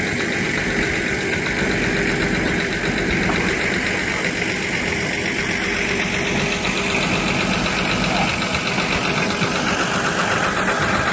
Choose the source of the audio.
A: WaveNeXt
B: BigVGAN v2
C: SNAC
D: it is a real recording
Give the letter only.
D